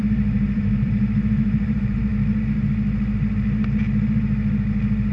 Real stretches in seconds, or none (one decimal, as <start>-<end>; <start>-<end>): 2.1-5.1